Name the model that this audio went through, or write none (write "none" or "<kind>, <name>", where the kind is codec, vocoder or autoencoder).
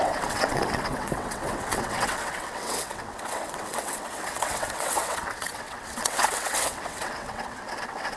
vocoder, WaveNeXt